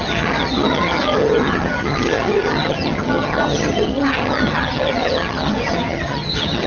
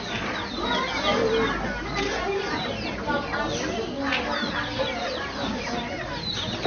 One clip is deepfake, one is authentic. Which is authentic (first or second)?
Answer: second